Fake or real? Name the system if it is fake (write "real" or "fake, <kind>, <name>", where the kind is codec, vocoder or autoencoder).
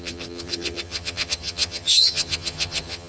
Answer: fake, vocoder, HiFi-GAN